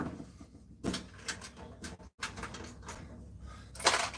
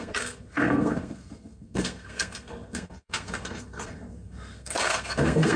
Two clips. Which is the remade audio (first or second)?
second